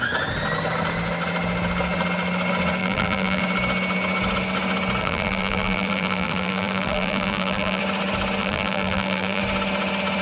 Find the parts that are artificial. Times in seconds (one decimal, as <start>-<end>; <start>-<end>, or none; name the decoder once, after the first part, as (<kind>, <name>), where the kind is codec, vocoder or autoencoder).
2.8-3.4 (vocoder, BigVGAN v2); 5.0-7.8; 8.4-9.4